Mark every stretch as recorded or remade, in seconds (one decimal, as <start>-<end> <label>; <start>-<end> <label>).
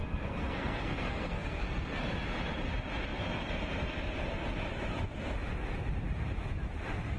0.0-2.0 remade; 2.0-7.2 recorded